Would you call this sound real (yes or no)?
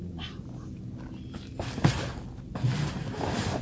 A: yes